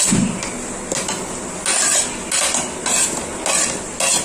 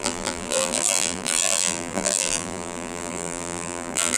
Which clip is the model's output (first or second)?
second